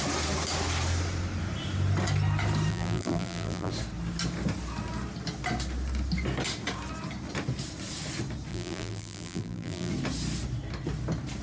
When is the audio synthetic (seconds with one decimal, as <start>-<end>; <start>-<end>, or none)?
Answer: 2.7-3.7; 8.5-9.9